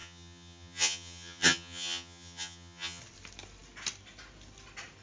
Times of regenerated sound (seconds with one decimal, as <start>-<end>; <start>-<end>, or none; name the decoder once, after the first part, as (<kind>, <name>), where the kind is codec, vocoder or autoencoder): 0.0-3.0 (vocoder, HiFi-GAN)